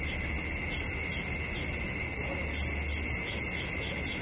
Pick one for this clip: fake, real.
real